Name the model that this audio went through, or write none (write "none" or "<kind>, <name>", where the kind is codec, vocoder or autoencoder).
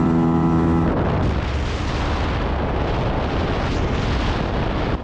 none